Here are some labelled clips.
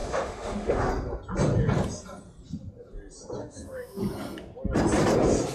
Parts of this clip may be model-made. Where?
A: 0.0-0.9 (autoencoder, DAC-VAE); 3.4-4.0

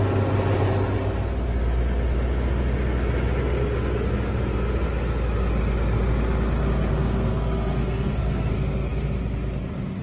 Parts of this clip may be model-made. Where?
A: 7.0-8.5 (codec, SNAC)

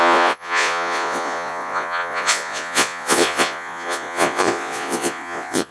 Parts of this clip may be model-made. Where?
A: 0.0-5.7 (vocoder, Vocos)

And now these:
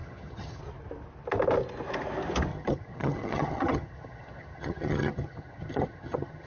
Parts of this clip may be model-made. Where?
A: 0.0-0.6 (vocoder, HiFi-GAN); 2.5-6.5

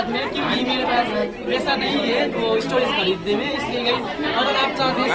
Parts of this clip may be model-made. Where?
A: none